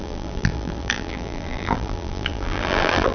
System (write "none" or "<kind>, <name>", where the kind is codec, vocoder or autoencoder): vocoder, BigVGAN v2